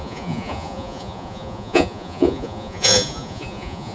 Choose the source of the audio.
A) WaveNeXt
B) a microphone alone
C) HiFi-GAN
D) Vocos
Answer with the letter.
D